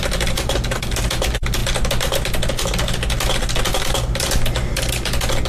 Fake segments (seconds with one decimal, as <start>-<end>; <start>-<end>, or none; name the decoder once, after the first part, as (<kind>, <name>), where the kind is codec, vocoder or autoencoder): none